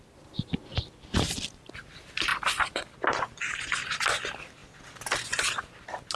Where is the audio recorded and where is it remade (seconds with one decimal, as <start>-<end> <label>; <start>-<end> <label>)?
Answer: 0.0-6.2 recorded